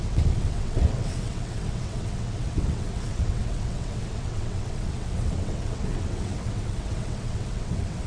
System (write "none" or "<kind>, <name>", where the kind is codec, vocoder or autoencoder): vocoder, WaveNeXt